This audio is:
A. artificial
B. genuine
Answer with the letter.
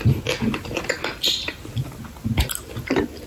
B